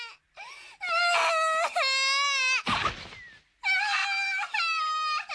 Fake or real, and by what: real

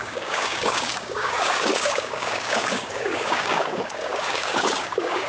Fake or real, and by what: fake, codec, DAC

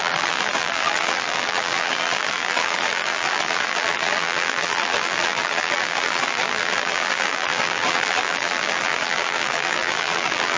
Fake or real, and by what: fake, vocoder, BigVGAN v2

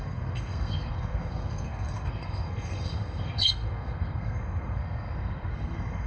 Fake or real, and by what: fake, codec, SNAC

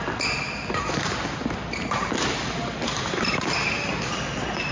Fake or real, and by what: real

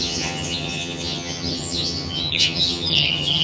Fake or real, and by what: fake, vocoder, HiFi-GAN